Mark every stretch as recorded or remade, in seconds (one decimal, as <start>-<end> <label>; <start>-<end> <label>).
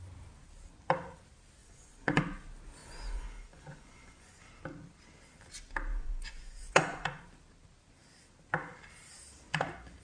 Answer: 0.0-1.6 recorded; 1.6-2.2 remade; 2.2-2.8 recorded; 2.8-4.4 remade; 4.4-5.9 recorded; 5.9-7.2 remade; 7.2-10.0 recorded